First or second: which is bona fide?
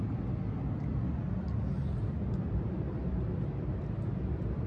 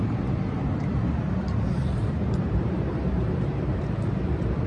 first